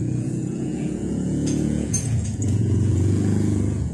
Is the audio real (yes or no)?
no